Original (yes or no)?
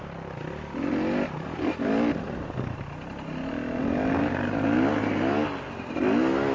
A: yes